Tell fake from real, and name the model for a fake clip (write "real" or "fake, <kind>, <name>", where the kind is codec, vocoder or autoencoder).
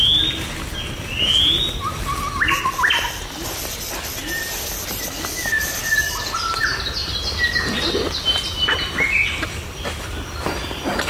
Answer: real